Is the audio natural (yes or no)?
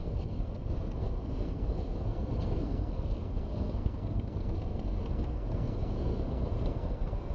no